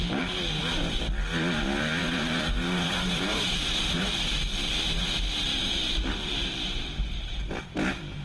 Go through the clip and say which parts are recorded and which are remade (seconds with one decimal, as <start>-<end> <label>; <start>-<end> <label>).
0.0-0.6 remade; 0.6-2.0 recorded; 2.0-4.0 remade; 4.0-5.5 recorded; 5.5-7.6 remade; 7.6-8.2 recorded